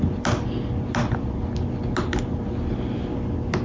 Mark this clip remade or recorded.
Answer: recorded